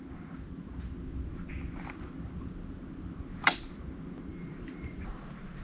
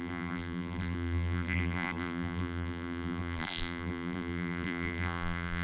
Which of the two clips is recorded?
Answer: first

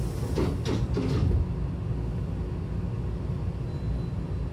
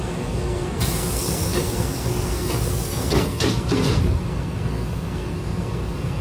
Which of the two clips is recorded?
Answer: first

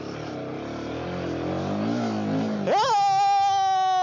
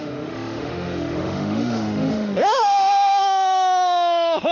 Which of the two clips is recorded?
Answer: first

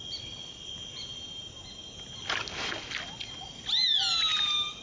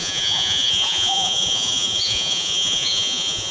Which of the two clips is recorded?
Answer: first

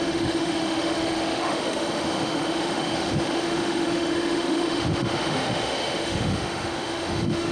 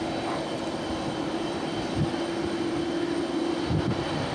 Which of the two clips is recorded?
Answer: second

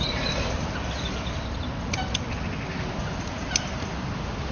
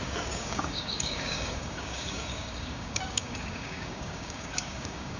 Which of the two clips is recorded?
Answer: first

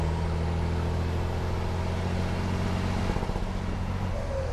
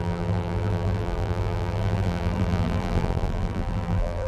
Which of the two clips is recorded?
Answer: first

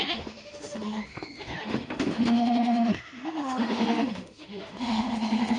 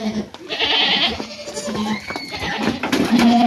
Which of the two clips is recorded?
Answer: second